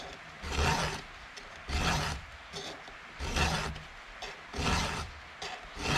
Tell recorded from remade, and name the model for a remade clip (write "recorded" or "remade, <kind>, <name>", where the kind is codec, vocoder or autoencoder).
recorded